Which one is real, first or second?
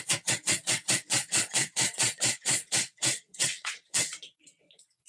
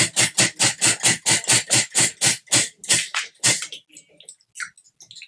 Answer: second